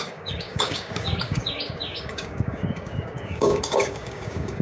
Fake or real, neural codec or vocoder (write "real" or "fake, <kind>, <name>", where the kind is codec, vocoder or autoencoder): fake, codec, DAC